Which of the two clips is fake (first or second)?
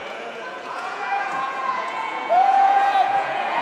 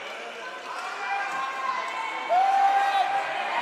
first